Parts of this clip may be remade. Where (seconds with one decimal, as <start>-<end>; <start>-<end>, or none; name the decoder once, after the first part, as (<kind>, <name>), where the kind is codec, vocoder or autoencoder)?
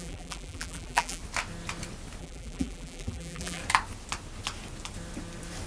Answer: 0.0-1.2 (vocoder, BigVGAN v2); 2.2-3.6